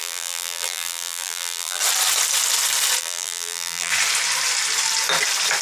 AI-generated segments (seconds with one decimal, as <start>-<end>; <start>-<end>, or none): 0.0-1.8; 3.0-3.9